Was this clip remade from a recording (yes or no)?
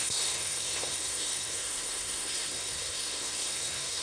yes